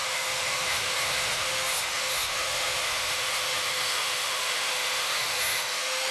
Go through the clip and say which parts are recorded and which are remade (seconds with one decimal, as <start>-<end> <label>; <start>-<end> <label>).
0.0-6.1 remade